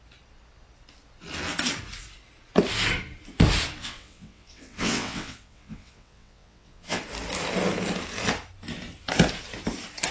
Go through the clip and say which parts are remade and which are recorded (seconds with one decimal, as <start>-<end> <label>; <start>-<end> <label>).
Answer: 0.0-3.8 recorded; 3.8-7.0 remade; 7.0-10.1 recorded